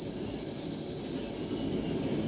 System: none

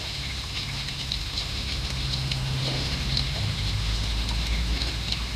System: autoencoder, DAC-VAE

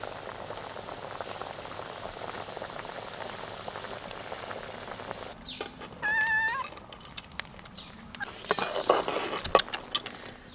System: none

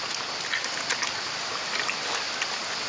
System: none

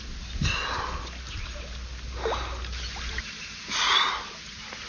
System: none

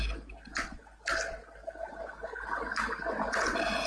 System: vocoder, BigVGAN v2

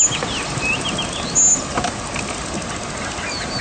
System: none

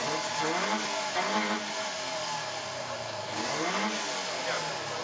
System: none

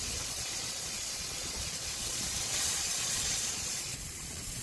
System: vocoder, Vocos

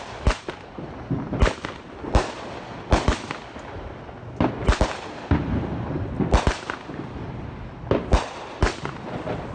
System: none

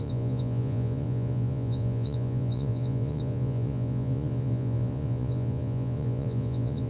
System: vocoder, Vocos